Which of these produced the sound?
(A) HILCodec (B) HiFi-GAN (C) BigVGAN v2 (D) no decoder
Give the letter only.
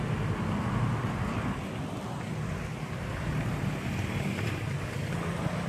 D